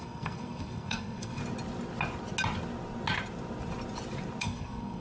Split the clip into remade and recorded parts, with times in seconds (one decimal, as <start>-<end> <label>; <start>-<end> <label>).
0.0-1.4 remade; 1.4-4.4 recorded; 4.4-5.0 remade